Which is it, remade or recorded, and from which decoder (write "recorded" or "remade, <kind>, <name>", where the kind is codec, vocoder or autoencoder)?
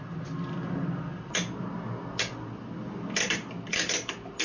recorded